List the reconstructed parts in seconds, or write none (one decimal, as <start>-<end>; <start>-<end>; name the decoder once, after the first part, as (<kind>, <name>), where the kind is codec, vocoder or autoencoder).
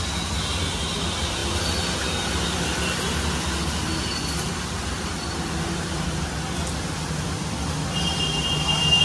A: none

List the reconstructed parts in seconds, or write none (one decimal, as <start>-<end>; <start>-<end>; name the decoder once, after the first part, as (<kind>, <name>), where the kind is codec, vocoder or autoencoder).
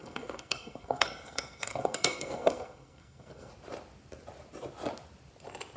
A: 0.0-3.5 (codec, SNAC)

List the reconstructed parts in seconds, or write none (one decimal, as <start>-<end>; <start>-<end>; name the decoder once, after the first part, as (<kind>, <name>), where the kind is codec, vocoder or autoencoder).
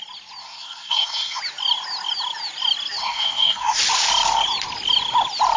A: 0.4-1.4 (codec, SNAC); 3.0-3.8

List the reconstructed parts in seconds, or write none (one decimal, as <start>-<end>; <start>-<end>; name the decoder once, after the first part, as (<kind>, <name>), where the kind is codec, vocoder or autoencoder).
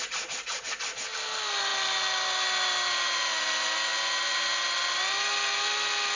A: none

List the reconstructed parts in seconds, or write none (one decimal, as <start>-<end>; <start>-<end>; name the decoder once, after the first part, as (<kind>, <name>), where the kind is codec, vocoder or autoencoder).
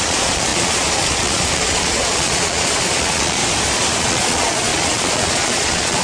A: 0.0-3.4 (vocoder, Vocos); 4.0-6.0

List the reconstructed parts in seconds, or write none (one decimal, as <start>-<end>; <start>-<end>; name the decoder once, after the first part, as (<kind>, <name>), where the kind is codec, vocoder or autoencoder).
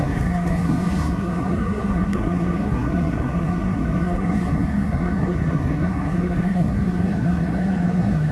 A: 0.0-8.3 (codec, SNAC)